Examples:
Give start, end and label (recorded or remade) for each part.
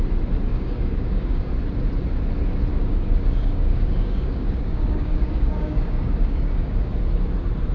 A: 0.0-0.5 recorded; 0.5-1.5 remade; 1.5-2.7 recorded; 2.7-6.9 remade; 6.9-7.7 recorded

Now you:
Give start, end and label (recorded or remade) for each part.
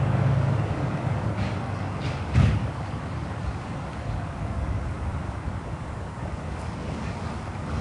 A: 0.0-7.8 remade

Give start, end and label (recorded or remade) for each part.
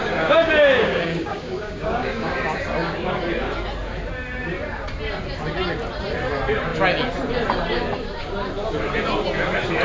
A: 0.0-2.3 remade; 2.3-9.8 recorded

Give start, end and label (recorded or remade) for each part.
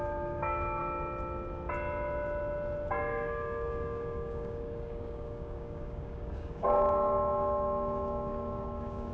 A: 0.0-0.8 remade; 0.8-2.9 recorded; 2.9-9.1 remade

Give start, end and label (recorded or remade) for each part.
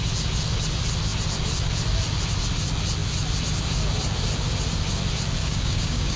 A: 0.0-5.4 recorded; 5.4-6.2 remade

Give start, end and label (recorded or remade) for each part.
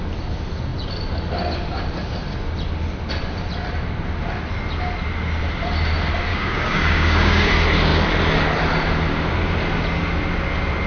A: 0.0-6.3 recorded; 6.3-7.5 remade; 7.5-10.9 recorded